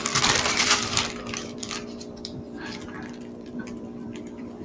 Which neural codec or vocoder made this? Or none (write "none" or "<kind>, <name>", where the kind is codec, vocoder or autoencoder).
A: vocoder, BigVGAN v2